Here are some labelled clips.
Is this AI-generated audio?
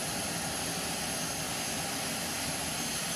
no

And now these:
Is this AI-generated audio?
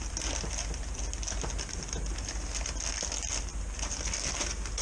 no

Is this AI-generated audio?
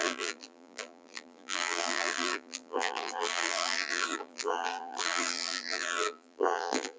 yes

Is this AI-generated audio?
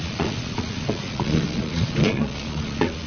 yes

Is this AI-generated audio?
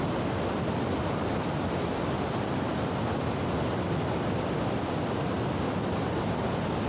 no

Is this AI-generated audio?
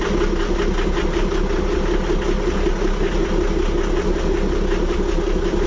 no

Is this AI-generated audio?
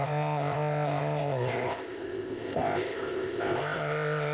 yes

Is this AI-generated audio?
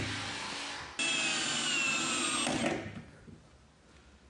no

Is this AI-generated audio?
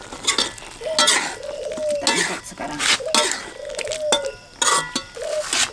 no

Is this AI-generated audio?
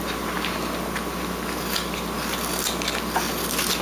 no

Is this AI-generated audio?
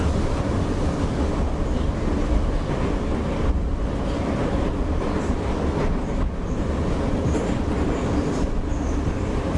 no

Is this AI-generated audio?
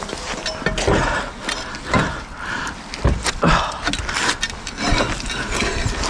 no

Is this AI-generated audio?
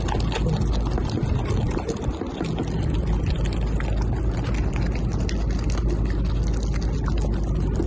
no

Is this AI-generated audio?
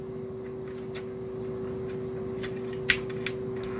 no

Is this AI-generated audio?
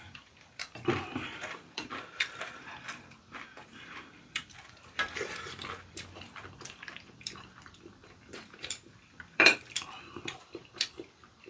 yes